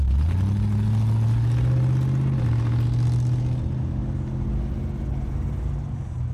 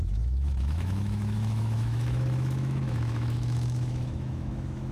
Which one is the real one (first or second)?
first